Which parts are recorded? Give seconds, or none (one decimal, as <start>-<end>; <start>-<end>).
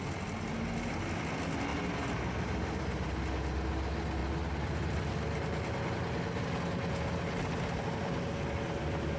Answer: 0.0-9.2